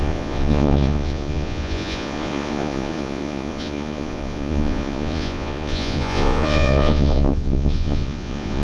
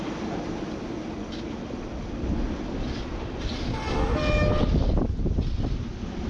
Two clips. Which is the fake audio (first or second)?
first